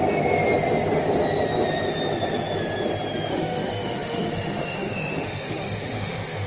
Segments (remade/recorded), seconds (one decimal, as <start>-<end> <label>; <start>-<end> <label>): 0.0-3.3 recorded; 3.3-6.5 remade